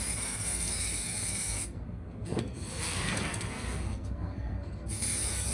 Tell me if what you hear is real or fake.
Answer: fake